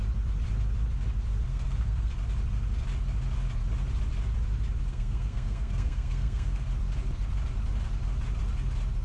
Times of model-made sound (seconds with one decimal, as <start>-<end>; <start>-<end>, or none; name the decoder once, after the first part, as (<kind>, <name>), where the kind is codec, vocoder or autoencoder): 1.5-2.1 (codec, SNAC); 4.9-6.6